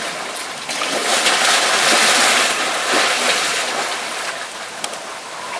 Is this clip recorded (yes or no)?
yes